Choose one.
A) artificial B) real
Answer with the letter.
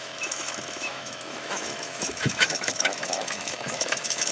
A